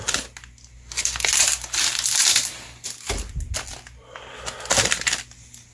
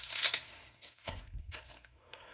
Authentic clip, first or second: first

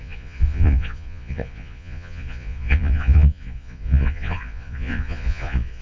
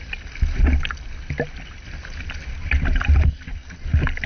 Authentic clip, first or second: second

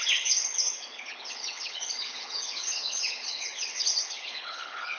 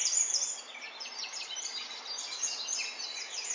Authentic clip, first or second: second